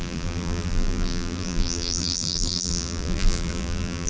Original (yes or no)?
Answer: no